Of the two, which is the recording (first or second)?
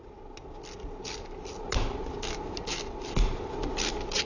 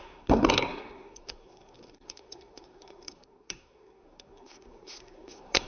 first